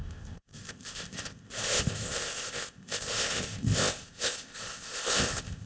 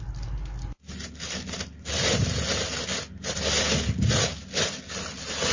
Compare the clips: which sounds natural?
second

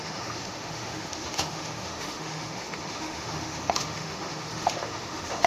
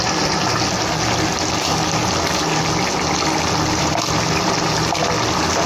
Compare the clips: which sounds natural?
second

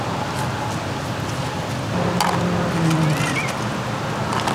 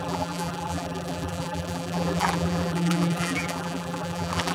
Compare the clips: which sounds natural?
first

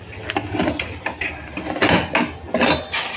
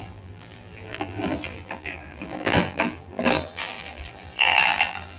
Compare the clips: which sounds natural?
first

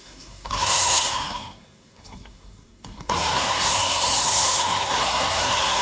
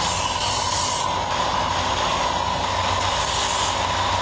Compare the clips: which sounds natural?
second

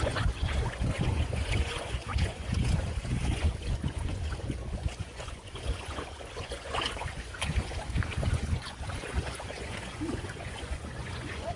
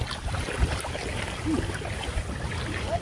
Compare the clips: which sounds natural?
second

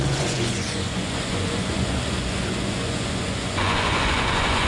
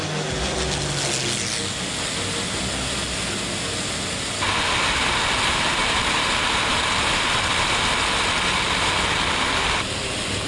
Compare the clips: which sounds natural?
second